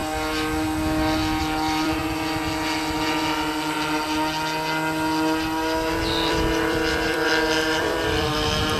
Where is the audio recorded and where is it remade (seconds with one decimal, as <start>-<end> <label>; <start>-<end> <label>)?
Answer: 0.0-1.4 recorded; 1.4-2.0 remade; 2.0-6.0 recorded; 6.0-7.3 remade; 7.3-7.8 recorded; 7.8-8.8 remade